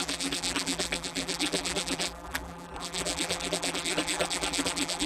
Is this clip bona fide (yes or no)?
no